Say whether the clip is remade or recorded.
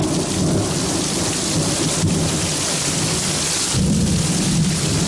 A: recorded